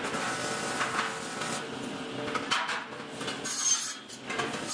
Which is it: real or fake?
real